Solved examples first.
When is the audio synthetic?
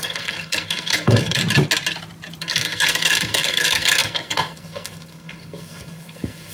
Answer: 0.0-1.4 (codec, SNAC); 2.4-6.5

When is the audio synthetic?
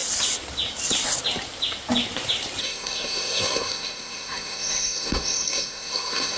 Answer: 2.6-6.4 (codec, SNAC)